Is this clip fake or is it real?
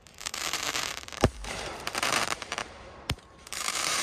fake